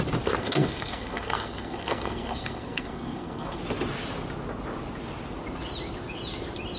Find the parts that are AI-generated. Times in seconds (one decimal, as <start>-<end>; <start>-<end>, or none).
0.4-3.6

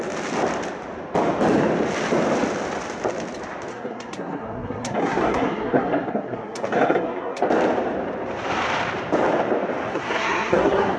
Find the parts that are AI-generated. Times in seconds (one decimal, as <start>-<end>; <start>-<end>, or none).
3.7-7.4; 9.9-11.0

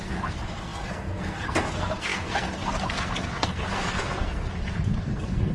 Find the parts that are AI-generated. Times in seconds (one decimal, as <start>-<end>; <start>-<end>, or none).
0.0-5.5

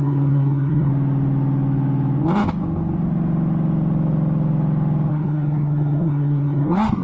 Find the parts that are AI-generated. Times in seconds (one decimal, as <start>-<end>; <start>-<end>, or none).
0.0-0.9; 5.1-7.0

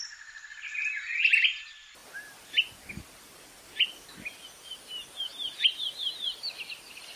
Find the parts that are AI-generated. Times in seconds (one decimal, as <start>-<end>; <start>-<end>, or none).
none

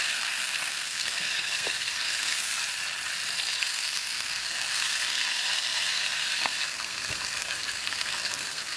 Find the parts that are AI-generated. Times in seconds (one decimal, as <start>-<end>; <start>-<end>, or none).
0.0-2.6; 3.6-8.8

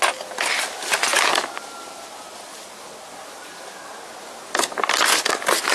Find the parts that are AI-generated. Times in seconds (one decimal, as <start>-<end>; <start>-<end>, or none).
none